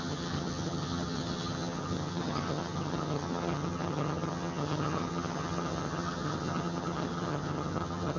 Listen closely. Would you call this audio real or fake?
fake